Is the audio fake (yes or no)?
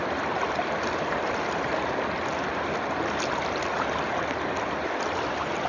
no